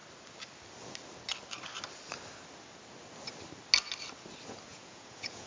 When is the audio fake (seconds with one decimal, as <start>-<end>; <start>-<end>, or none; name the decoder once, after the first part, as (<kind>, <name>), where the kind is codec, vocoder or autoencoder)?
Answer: 4.7-5.5 (vocoder, Vocos)